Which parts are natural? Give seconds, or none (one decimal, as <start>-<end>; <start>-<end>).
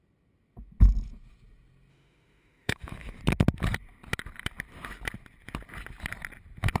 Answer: 0.0-1.9; 3.2-6.8